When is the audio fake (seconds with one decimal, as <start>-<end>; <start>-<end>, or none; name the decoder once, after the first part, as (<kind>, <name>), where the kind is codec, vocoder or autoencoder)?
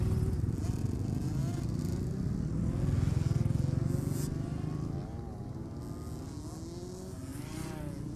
none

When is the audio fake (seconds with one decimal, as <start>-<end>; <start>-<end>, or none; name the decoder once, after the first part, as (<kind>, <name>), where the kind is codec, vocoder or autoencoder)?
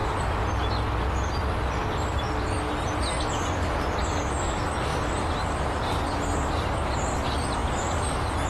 none